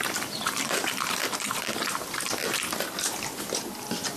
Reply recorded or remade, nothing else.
remade